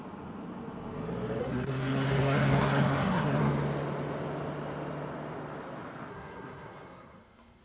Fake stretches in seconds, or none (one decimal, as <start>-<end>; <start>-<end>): 1.4-3.4; 6.1-7.6